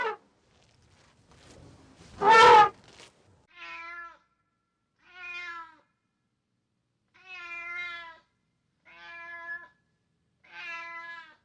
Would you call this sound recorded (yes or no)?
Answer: yes